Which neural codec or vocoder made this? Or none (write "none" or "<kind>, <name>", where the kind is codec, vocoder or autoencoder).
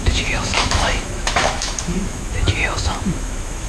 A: autoencoder, DAC-VAE